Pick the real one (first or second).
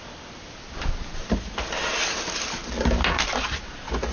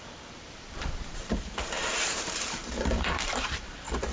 first